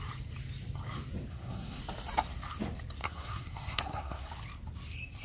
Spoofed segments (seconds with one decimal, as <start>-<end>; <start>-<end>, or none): 1.3-1.8; 3.0-4.3